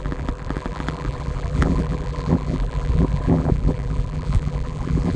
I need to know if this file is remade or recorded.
remade